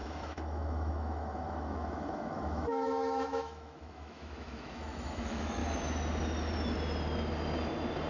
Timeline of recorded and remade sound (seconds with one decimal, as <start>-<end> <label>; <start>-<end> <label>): 0.0-5.6 remade; 5.6-8.1 recorded